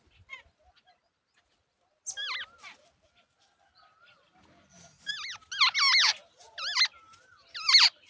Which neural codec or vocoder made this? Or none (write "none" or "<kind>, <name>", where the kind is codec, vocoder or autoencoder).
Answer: none